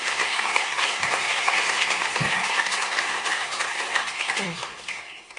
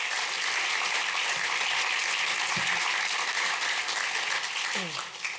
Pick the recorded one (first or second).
second